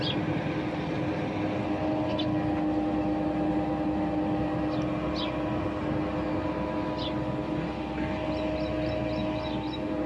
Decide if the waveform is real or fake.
real